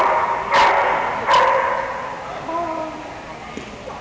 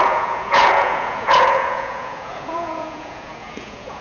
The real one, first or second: first